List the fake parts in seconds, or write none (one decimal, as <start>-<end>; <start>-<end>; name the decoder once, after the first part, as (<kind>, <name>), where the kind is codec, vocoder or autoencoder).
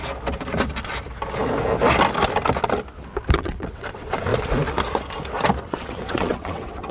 3.3-4.3 (vocoder, WaveNeXt); 5.6-6.9